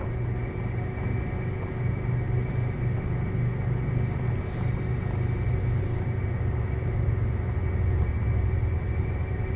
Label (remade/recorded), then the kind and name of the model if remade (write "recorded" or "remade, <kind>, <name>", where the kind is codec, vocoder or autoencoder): recorded